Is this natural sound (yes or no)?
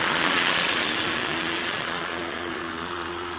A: no